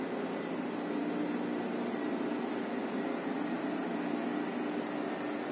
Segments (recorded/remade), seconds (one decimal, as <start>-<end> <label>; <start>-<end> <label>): 0.0-5.5 recorded